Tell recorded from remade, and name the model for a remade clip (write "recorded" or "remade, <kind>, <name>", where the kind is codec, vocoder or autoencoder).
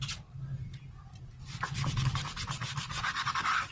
recorded